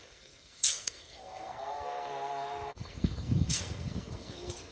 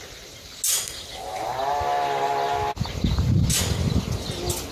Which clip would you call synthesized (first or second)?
first